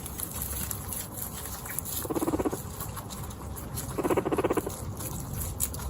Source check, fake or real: real